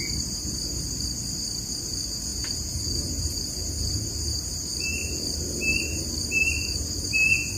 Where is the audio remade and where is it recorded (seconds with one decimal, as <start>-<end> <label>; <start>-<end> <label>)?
0.0-2.3 recorded; 2.3-4.5 remade; 4.5-7.6 recorded